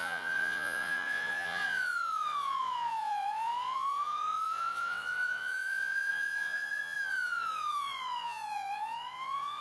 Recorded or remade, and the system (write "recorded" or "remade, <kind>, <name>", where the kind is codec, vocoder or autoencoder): remade, vocoder, Vocos